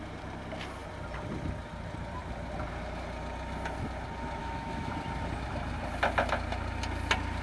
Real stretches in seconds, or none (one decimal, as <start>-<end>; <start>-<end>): 0.0-4.4; 4.9-7.4